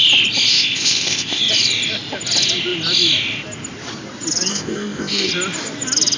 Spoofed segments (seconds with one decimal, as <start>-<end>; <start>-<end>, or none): 0.5-1.4; 4.5-5.3